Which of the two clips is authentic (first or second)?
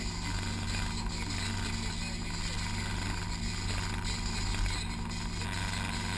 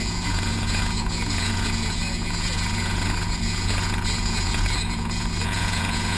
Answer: first